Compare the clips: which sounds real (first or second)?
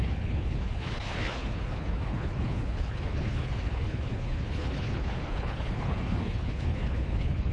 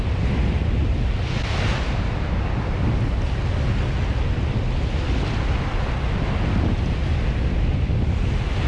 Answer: second